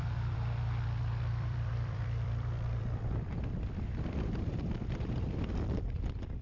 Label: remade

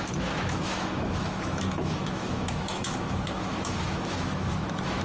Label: remade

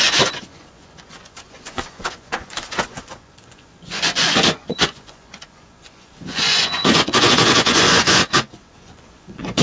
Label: remade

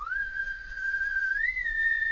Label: remade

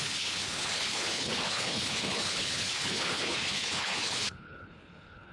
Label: remade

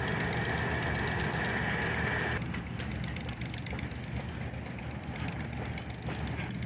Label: recorded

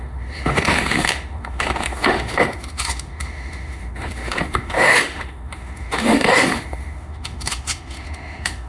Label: remade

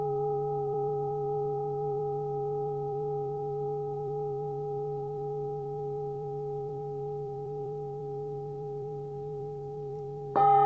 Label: remade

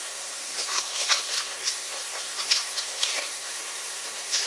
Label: remade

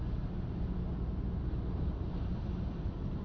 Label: recorded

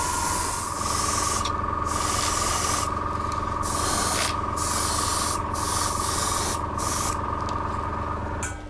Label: recorded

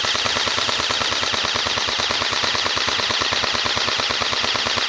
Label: recorded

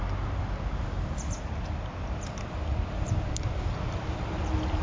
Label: recorded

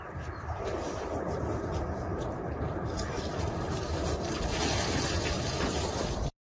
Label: recorded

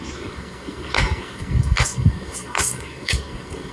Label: remade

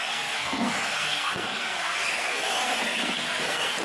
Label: remade